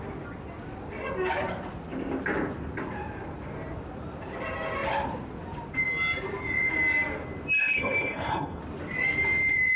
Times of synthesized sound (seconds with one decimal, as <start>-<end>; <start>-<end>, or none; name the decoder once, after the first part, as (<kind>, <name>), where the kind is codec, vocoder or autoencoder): 7.6-8.6 (codec, HILCodec)